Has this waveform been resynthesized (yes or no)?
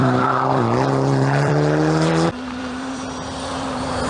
yes